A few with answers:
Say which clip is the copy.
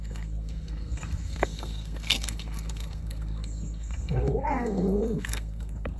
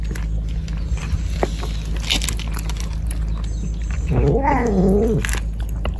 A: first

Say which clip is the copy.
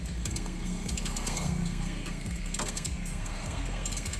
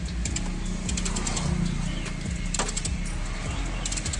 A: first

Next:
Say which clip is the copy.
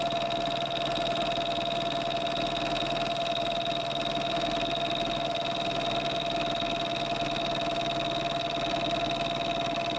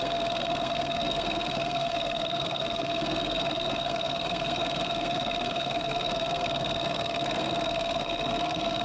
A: second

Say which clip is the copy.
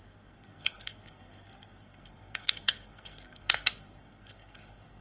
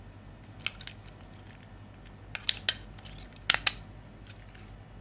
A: first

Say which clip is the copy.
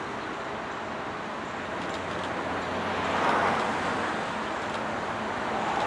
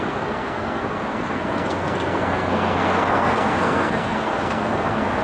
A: second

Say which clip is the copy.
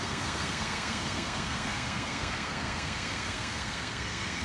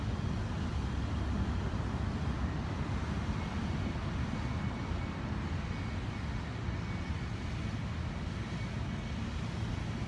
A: first